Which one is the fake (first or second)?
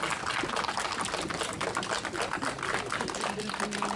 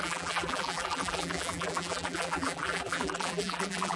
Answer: second